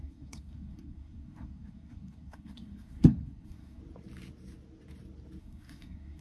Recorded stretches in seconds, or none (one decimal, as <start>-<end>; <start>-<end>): 3.8-5.4